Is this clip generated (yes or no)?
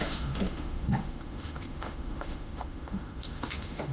yes